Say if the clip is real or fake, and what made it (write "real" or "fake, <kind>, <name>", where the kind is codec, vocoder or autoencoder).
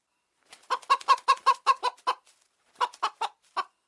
real